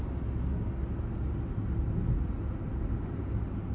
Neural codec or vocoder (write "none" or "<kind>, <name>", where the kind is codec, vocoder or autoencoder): none